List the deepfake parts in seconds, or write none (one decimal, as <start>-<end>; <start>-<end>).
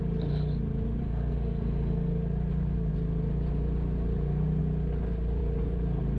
1.0-2.1